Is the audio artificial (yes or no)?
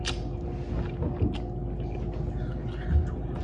no